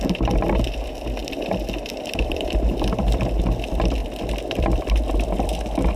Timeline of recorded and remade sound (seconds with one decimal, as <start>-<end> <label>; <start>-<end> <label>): 0.0-1.2 recorded; 1.2-3.4 remade; 3.4-4.0 recorded; 4.0-5.1 remade; 5.1-6.0 recorded